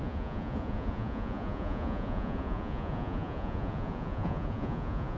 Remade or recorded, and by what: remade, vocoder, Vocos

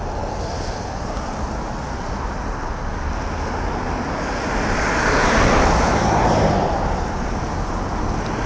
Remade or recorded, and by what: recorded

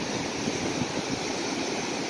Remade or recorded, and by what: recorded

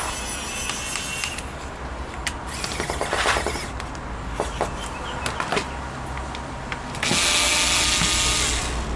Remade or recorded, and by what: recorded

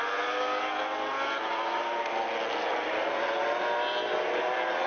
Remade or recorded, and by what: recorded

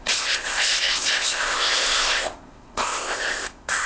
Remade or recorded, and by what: remade, codec, ZipCodec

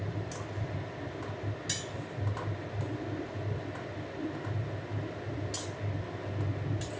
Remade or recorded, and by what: recorded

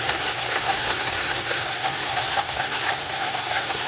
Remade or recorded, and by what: remade, codec, SNAC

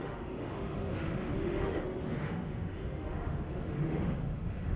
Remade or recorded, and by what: remade, autoencoder, DAC-VAE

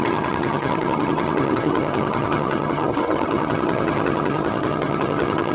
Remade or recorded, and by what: remade, vocoder, HiFi-GAN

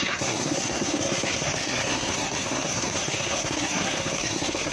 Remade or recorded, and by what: remade, codec, SNAC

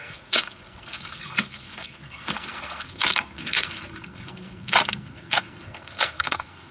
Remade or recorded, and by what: remade, codec, SNAC